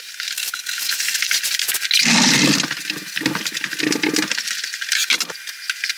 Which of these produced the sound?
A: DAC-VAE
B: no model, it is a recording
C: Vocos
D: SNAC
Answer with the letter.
B